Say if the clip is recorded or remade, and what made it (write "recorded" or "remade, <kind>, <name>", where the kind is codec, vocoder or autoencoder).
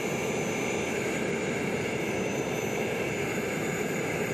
recorded